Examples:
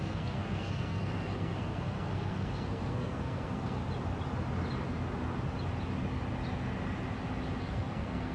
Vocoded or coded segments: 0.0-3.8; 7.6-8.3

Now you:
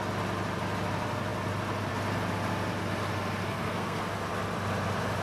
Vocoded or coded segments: 3.5-4.0

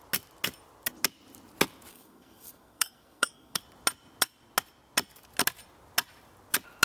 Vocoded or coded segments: 1.9-3.6

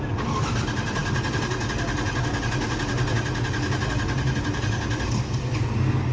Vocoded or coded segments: none

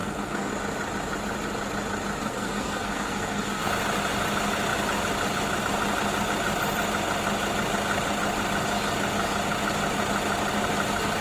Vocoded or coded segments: 0.0-0.5; 2.2-3.7

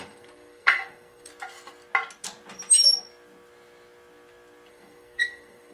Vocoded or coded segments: 0.0-1.3; 4.7-5.7

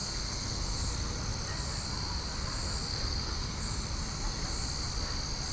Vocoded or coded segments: 0.0-0.9; 2.9-3.7